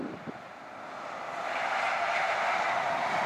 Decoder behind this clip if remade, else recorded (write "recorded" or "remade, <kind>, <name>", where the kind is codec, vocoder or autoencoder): recorded